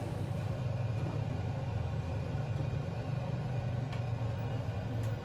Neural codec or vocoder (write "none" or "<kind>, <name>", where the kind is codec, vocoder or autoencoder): none